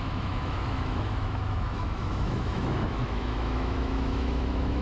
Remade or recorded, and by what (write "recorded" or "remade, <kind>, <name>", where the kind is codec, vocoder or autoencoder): remade, autoencoder, DAC-VAE